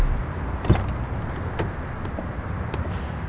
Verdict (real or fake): real